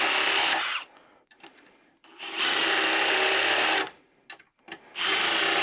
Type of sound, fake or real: real